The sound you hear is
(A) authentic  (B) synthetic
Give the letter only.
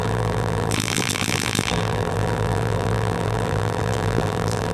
B